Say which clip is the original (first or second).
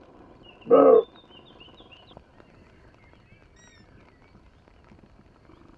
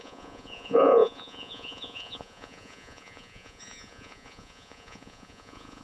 first